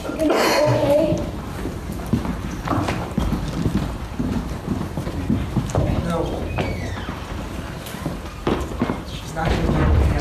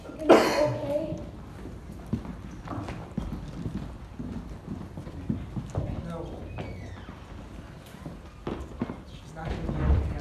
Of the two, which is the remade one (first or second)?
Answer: first